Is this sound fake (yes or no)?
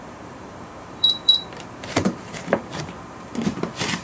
yes